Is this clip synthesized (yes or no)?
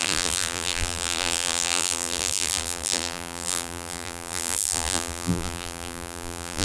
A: yes